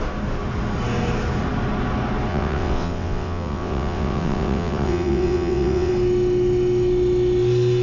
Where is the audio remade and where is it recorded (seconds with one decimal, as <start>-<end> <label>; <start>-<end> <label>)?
0.0-2.3 recorded; 2.3-5.9 remade; 5.9-7.8 recorded